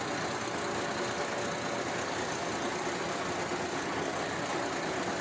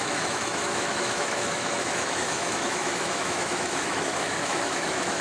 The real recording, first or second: first